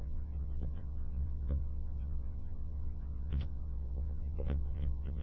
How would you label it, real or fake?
fake